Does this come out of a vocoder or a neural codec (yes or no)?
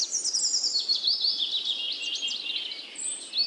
no